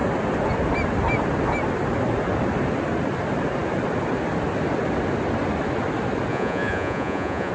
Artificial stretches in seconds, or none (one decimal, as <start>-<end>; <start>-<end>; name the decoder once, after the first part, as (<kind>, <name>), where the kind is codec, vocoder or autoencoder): 6.3-7.5 (vocoder, Vocos)